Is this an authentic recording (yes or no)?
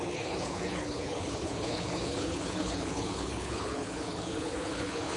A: no